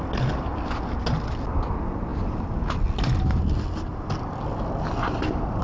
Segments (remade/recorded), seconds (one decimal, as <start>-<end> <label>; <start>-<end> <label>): 0.0-5.6 recorded

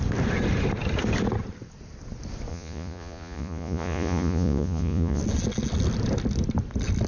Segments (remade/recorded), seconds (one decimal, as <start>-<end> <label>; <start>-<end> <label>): 0.0-2.5 recorded; 2.5-5.2 remade; 5.2-7.1 recorded

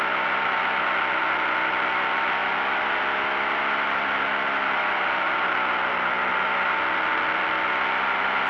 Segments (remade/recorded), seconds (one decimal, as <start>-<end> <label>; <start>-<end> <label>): 0.0-8.5 recorded

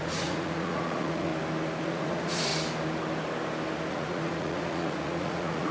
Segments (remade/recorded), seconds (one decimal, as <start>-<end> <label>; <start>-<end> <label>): 0.0-1.3 remade; 1.3-1.8 recorded; 1.8-2.5 remade; 2.5-3.9 recorded; 3.9-5.7 remade

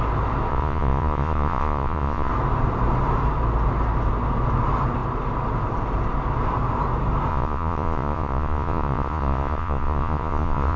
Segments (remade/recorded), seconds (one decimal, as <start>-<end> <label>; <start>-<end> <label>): 0.0-0.5 recorded; 0.5-2.3 remade; 2.3-7.3 recorded; 7.3-10.8 remade

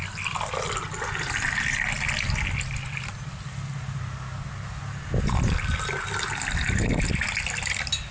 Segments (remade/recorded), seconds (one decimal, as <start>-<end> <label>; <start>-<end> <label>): 0.0-8.1 recorded

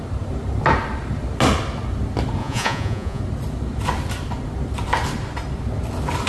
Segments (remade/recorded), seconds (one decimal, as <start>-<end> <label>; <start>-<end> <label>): 0.0-2.4 recorded; 2.4-3.2 remade; 3.2-6.3 recorded

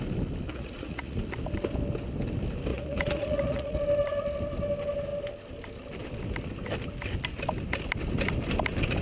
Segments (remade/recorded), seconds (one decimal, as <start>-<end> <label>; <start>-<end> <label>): 0.0-0.5 recorded; 0.5-1.2 remade; 1.2-2.7 recorded; 2.7-3.8 remade; 3.8-9.0 recorded